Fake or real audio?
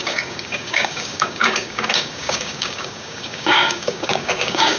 fake